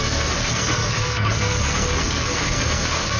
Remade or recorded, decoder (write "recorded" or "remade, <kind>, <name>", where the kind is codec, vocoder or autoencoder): remade, codec, SNAC